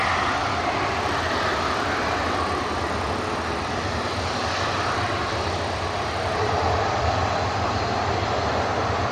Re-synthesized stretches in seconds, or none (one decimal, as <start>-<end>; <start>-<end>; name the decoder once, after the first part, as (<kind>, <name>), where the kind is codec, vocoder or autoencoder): none